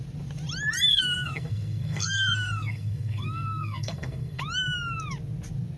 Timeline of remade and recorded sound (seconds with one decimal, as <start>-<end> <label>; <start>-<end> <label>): 0.0-0.9 recorded; 0.9-4.4 remade; 4.4-5.8 recorded